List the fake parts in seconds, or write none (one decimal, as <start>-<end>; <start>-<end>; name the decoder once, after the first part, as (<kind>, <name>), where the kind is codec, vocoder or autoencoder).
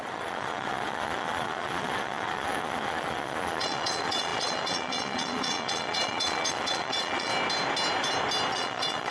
0.0-7.3 (vocoder, Vocos); 8.5-9.1